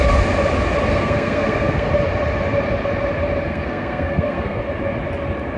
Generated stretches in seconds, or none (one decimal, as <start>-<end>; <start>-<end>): 0.9-1.9; 3.5-4.6